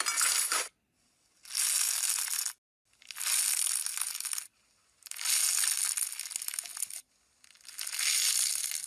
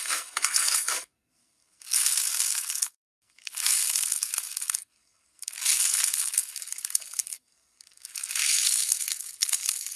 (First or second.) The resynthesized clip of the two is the second